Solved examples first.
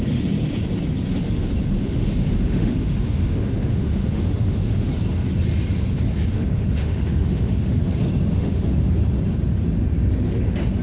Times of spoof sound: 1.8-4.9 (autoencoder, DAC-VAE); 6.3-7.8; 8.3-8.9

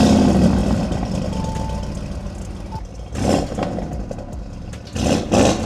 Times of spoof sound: none

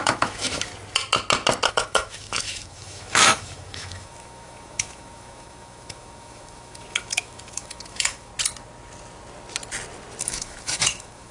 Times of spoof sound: 0.0-0.7 (autoencoder, DAC-VAE); 1.7-8.3; 10.2-11.3

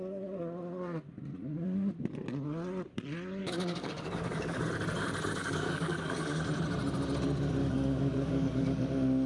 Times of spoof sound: 3.4-4.6 (codec, DAC); 5.4-6.4; 7.6-8.9

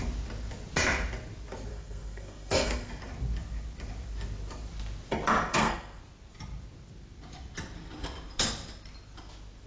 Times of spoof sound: 1.7-2.9 (codec, SNAC); 5.5-6.0

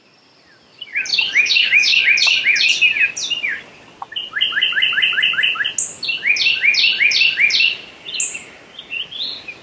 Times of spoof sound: 1.1-2.0 (codec, DAC)

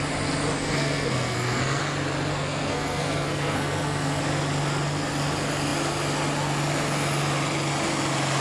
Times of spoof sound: 0.6-1.8 (codec, SNAC); 2.3-4.2